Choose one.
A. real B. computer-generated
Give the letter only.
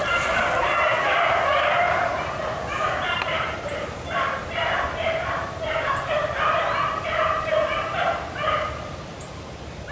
B